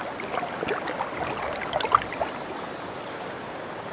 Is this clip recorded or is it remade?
recorded